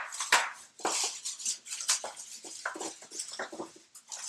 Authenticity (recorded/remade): recorded